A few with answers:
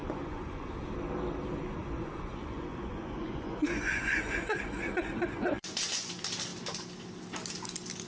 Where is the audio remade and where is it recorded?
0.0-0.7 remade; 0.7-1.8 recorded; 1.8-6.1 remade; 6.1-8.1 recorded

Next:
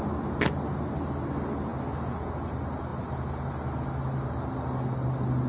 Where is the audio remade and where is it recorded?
0.0-5.5 recorded

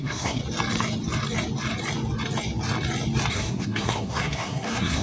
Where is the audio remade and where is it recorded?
0.0-0.4 remade; 0.4-3.3 recorded; 3.3-5.0 remade

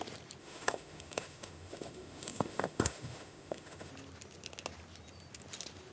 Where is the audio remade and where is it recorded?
0.0-0.4 recorded; 0.4-3.9 remade; 3.9-5.9 recorded